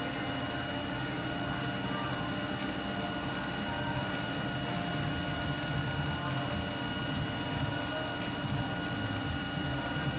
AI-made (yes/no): no